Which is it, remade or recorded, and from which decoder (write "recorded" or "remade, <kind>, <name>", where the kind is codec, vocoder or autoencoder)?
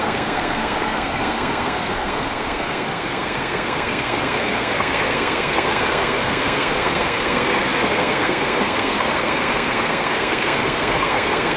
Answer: remade, codec, SNAC